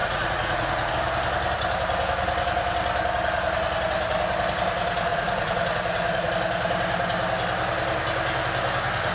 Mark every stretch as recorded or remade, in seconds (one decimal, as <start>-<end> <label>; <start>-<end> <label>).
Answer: 0.0-0.9 remade; 0.9-5.1 recorded; 5.1-6.3 remade; 6.3-9.1 recorded